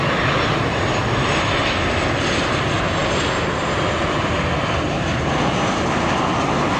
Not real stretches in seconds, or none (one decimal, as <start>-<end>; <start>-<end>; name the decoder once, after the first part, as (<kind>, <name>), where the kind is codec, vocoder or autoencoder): none